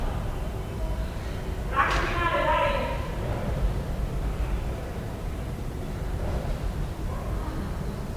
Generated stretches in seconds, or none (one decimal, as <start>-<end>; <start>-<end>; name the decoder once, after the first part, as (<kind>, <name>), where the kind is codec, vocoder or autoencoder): 2.3-7.1 (vocoder, BigVGAN v2)